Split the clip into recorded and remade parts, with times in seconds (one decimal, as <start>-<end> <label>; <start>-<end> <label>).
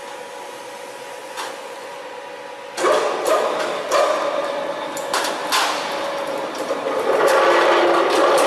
0.0-1.2 recorded; 1.2-2.1 remade; 2.1-8.5 recorded